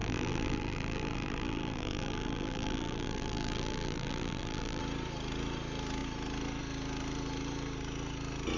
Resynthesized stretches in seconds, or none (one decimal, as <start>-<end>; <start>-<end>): 0.0-4.8